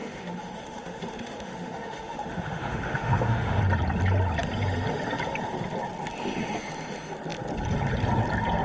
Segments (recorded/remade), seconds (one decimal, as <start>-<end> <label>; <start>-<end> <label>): 0.0-3.6 remade; 3.6-8.6 recorded